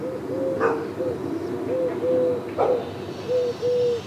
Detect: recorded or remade recorded